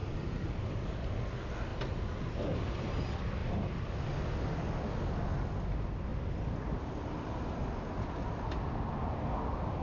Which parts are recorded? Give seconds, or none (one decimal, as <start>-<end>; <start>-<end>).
0.7-3.4; 3.9-6.1; 7.6-9.8